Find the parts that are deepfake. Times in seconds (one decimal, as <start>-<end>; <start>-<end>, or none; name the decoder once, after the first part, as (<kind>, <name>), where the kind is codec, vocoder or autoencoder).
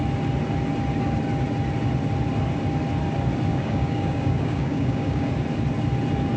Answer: 3.5-5.3 (codec, DAC)